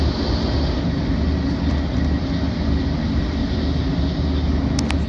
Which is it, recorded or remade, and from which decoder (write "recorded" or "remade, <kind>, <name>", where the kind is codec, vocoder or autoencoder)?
recorded